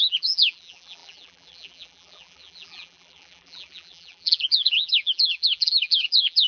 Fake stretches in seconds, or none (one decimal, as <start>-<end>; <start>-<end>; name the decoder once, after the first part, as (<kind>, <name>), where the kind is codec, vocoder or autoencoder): 0.0-6.5 (vocoder, BigVGAN v2)